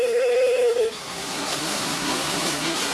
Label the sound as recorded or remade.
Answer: remade